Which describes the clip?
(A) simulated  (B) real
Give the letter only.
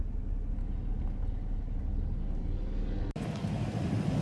B